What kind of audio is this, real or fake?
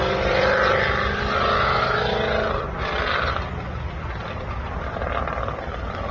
fake